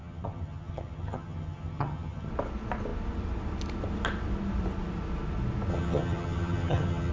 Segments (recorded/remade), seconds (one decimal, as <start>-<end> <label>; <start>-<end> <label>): 0.0-2.3 remade; 2.3-5.7 recorded; 5.7-7.1 remade